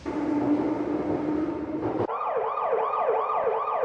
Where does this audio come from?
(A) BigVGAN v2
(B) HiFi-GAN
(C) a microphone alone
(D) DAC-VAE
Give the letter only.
C